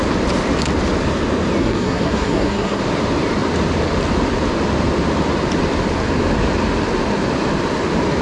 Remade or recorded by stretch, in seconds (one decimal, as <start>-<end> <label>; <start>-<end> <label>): 0.0-1.6 recorded; 1.6-2.8 remade; 2.8-8.2 recorded